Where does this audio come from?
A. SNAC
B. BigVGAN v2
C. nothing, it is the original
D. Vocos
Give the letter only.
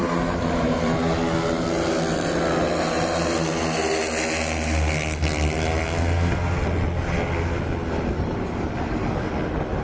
C